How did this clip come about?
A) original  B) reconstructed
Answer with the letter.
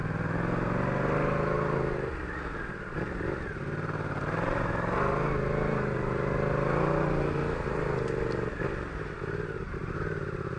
A